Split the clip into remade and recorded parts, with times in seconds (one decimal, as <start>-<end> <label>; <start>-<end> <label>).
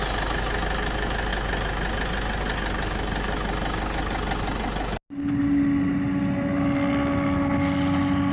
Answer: 0.0-8.3 recorded